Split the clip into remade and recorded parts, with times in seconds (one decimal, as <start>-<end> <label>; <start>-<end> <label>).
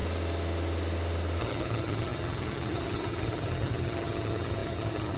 0.0-1.4 recorded; 1.4-5.2 remade